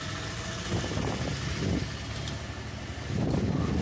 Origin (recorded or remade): recorded